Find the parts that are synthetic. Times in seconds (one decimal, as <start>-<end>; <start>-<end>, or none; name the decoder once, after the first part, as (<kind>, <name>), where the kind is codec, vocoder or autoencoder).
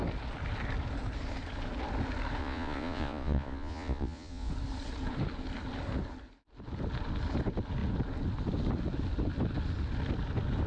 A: 2.4-4.5 (vocoder, Vocos)